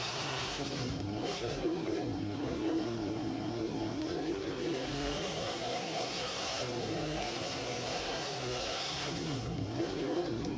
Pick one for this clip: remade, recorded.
remade